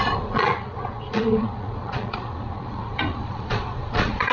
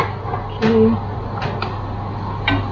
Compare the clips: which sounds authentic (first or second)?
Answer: second